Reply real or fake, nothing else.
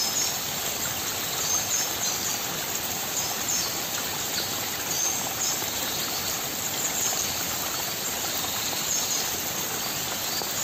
real